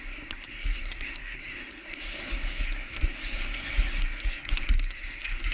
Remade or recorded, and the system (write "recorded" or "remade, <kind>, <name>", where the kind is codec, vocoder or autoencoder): remade, codec, SNAC